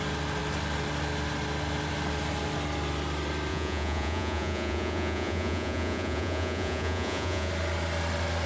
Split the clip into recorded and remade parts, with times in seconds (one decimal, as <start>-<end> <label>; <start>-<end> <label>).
0.0-3.5 recorded; 3.5-7.5 remade; 7.5-8.5 recorded